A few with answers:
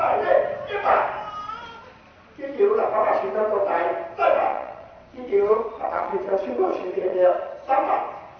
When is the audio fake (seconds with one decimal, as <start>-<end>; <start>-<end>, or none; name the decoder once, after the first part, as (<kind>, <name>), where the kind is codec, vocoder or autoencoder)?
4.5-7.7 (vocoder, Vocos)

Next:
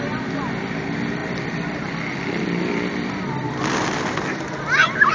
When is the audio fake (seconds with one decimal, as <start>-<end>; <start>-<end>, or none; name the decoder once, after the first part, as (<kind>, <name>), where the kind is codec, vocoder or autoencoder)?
none

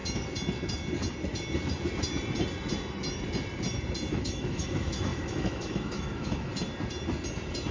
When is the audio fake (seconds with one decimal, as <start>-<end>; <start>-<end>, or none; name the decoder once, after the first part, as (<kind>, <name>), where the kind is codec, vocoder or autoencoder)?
4.1-6.5 (autoencoder, DAC-VAE)

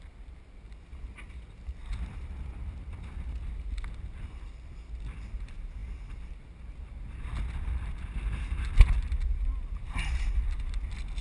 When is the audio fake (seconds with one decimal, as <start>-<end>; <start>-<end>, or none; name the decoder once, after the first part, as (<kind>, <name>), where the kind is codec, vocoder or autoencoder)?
1.8-2.6 (vocoder, BigVGAN v2)

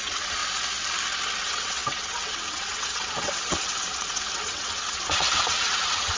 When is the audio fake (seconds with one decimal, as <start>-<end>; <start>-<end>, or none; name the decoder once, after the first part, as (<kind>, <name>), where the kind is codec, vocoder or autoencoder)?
0.0-0.4 (vocoder, WaveNeXt); 1.3-6.2